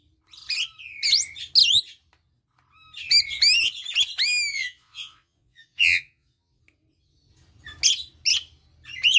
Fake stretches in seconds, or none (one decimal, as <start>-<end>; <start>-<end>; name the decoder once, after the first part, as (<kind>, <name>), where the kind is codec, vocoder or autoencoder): 4.5-6.6 (vocoder, Vocos)